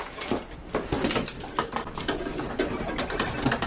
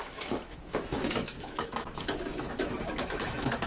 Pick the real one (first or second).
first